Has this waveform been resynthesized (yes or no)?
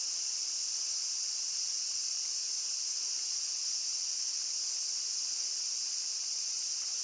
no